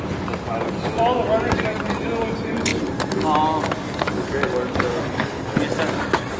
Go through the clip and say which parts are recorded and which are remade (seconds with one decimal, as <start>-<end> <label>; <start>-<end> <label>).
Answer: 0.0-4.9 recorded; 4.9-5.6 remade; 5.6-6.4 recorded